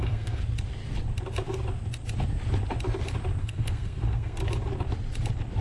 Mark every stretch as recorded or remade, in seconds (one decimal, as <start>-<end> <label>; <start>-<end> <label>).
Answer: 0.0-0.4 remade; 0.4-3.4 recorded; 3.4-4.4 remade; 4.4-5.6 recorded